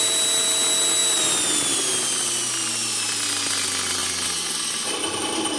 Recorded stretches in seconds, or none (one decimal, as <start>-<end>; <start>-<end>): 0.0-5.6